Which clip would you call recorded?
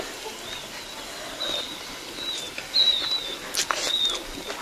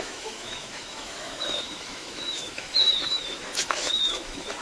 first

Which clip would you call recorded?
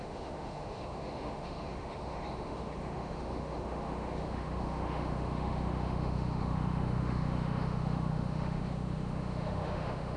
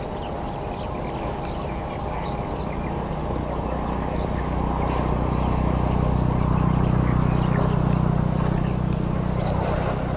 second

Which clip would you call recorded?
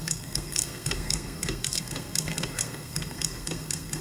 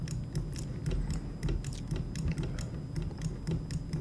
second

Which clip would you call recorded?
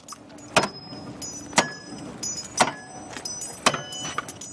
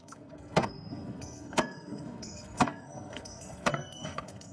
first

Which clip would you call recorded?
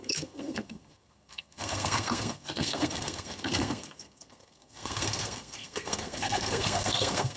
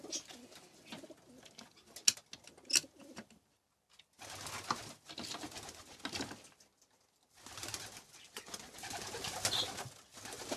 second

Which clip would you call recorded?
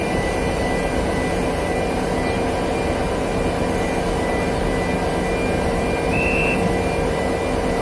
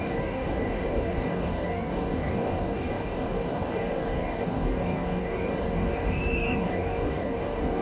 first